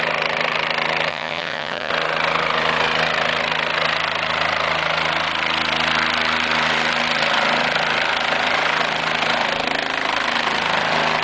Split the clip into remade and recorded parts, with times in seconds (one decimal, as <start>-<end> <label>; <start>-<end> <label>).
0.0-1.1 recorded; 1.1-1.9 remade; 1.9-11.2 recorded